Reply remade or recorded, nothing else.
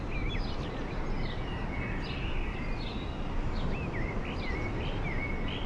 recorded